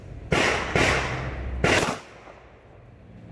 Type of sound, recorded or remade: recorded